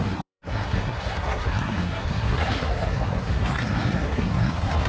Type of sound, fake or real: fake